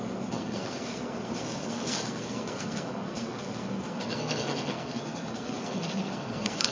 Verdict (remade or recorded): remade